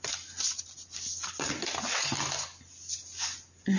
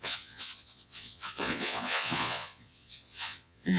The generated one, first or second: second